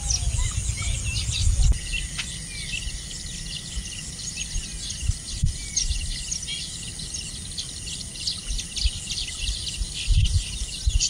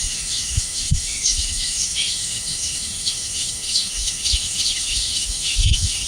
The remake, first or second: second